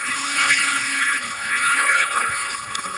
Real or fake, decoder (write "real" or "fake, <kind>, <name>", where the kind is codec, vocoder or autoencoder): fake, codec, HILCodec